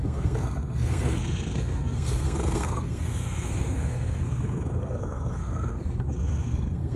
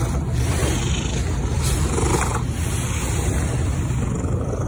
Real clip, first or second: second